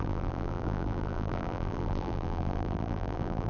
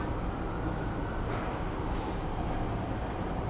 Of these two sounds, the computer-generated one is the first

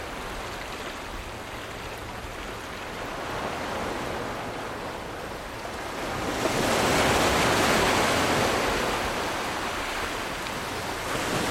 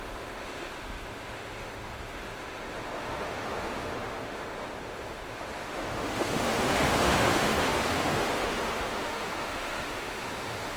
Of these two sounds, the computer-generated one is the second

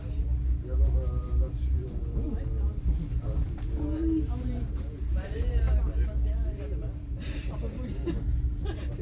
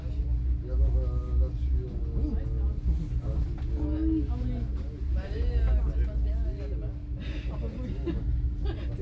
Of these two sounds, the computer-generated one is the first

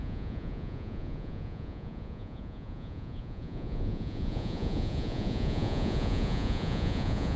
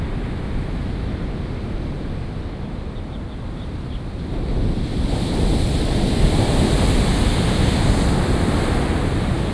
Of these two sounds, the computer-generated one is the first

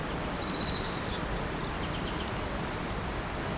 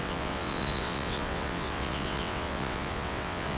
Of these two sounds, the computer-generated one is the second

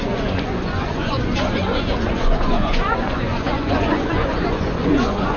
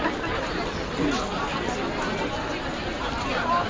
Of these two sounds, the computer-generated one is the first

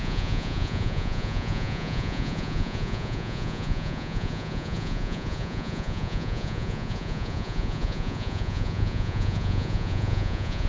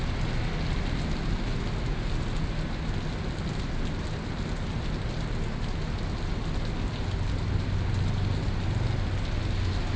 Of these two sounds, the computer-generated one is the first